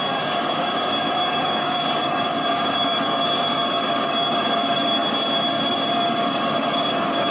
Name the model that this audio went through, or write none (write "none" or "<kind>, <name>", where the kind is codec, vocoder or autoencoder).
codec, DAC